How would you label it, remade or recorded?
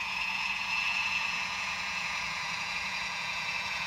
remade